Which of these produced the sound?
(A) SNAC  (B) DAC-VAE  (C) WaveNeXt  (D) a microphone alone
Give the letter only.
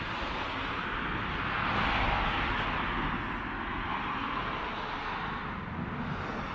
D